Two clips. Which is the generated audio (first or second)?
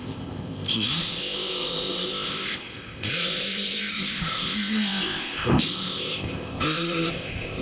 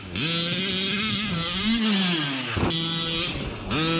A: first